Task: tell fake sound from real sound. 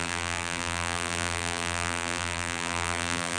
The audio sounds fake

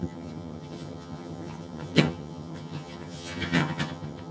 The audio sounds fake